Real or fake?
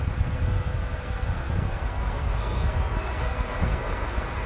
fake